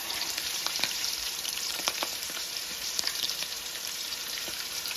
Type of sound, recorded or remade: remade